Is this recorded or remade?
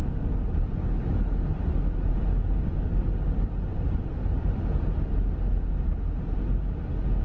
recorded